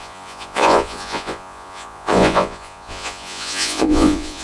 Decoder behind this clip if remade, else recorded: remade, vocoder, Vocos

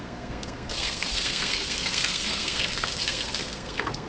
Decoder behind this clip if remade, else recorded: remade, codec, SNAC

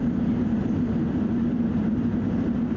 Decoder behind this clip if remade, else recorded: recorded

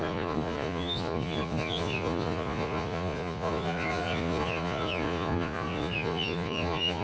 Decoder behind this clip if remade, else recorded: remade, vocoder, Vocos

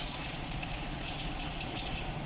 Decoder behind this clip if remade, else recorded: remade, vocoder, Vocos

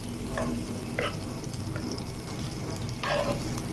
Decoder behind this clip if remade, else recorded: recorded